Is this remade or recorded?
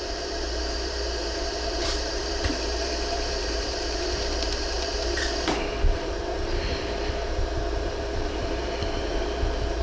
remade